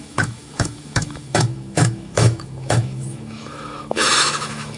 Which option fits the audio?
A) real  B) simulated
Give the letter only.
B